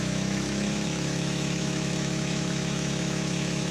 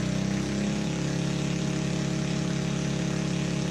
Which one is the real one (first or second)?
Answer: second